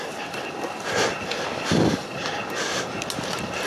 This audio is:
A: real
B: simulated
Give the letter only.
A